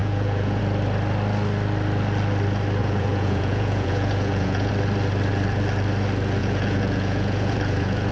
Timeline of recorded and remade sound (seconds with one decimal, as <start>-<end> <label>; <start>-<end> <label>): 0.0-0.6 remade; 0.6-2.8 recorded; 2.8-4.7 remade; 4.7-6.4 recorded; 6.4-8.1 remade